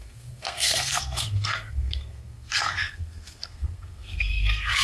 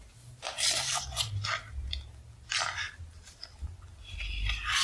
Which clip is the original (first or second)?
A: second